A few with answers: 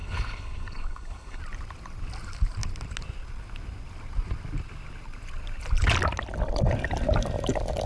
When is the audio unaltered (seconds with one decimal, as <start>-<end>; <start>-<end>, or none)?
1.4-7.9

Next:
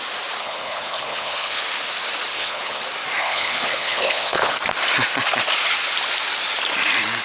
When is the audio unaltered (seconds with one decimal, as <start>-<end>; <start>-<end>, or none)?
0.0-0.4; 1.6-2.3; 2.8-3.2; 4.5-7.2

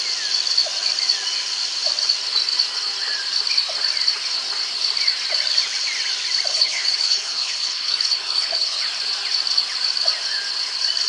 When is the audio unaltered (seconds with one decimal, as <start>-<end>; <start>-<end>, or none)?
0.0-6.5; 8.8-11.1

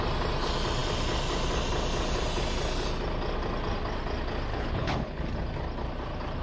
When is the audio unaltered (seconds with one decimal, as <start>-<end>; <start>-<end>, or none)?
0.0-4.5; 5.2-6.4

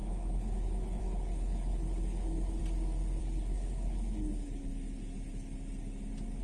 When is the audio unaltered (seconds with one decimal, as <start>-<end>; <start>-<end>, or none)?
2.6-3.2; 4.7-6.4